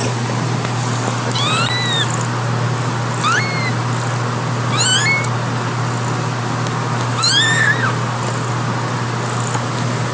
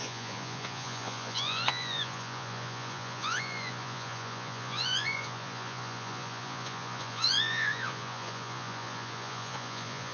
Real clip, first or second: first